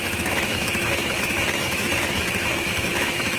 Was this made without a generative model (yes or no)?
no